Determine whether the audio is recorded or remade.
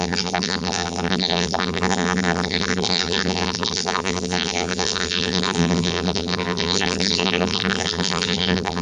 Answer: remade